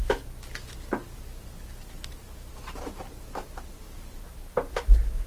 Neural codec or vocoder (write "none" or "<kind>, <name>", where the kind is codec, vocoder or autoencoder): none